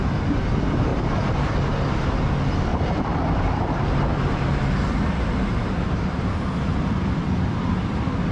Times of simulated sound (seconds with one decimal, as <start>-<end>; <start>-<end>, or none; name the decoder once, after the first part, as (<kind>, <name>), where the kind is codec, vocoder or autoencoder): 2.7-6.3 (vocoder, BigVGAN v2)